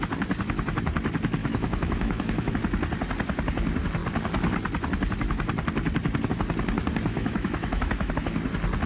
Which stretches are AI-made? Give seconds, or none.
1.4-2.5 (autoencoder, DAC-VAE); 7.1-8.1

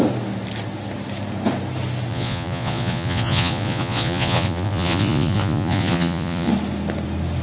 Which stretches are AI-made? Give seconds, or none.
2.1-6.5 (vocoder, Vocos)

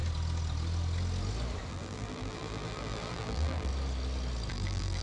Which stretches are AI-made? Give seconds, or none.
1.7-3.7 (vocoder, BigVGAN v2); 4.5-5.0

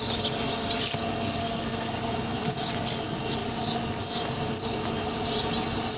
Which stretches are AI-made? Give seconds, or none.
1.4-2.1 (codec, SNAC)

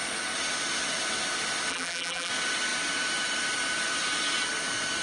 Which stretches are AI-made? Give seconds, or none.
1.7-2.3 (vocoder, BigVGAN v2)

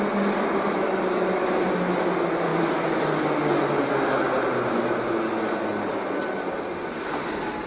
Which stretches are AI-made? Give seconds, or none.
none

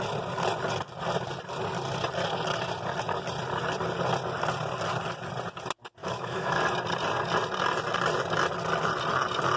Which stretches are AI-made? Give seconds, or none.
6.0-6.6 (autoencoder, DAC-VAE)